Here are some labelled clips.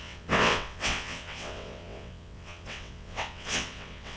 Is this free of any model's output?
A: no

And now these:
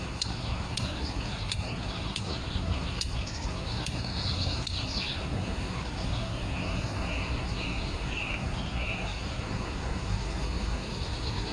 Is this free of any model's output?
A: no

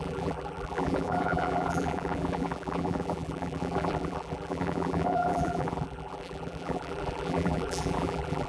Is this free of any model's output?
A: no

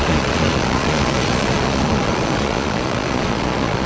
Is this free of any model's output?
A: no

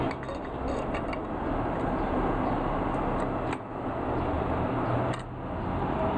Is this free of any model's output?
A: yes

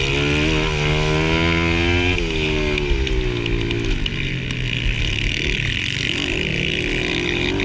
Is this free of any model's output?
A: yes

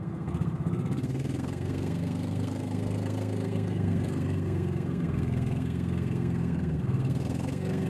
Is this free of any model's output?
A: no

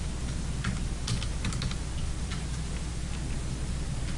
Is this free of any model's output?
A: yes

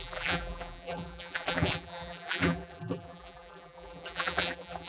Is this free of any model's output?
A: no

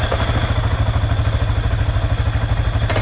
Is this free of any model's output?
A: yes